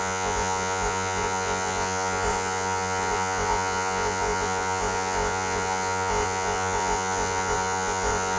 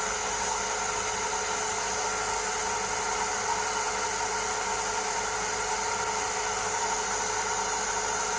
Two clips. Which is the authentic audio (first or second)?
second